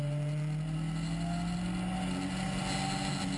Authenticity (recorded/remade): recorded